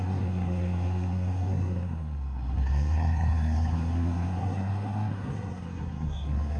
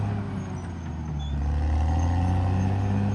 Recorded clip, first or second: second